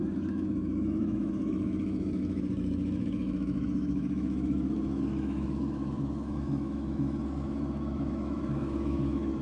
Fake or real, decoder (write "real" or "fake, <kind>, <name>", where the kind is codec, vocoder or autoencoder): fake, autoencoder, DAC-VAE